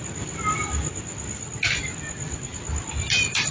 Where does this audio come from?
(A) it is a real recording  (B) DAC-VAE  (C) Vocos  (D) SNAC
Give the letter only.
A